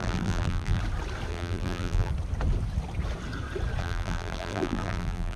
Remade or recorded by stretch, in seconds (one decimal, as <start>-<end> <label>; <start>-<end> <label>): 0.0-0.8 remade; 0.8-1.3 recorded; 1.3-2.1 remade; 2.1-3.8 recorded; 3.8-5.4 remade